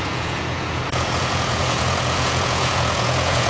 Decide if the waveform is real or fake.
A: fake